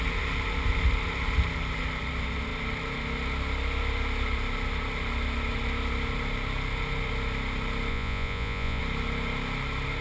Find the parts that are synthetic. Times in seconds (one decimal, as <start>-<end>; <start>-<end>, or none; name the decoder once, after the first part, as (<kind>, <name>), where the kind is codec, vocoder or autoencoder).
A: 7.9-8.8 (vocoder, Vocos)